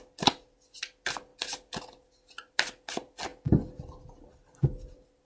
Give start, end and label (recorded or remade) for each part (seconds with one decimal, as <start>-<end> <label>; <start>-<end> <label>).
0.0-5.2 recorded